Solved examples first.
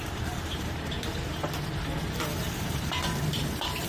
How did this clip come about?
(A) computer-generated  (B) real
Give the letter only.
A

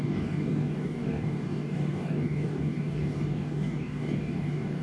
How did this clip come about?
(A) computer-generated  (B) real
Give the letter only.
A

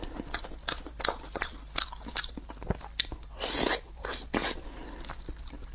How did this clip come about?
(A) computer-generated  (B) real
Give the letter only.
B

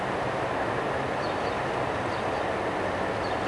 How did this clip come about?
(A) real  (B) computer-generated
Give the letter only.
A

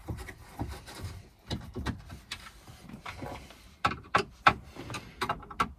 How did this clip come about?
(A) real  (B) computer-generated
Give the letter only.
A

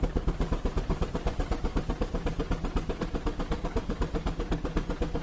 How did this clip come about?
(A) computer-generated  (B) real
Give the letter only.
A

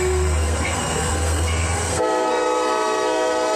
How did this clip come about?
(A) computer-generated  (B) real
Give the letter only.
A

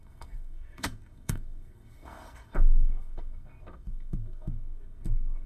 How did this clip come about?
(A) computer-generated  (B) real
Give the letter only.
A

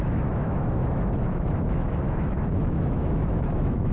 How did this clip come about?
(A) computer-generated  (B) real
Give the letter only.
A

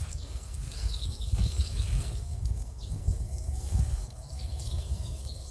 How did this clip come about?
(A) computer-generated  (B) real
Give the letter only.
A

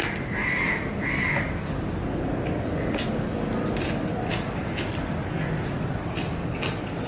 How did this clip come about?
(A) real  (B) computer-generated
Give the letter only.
A